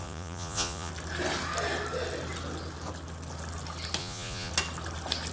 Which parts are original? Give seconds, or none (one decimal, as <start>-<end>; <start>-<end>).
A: 0.9-4.0; 4.5-5.3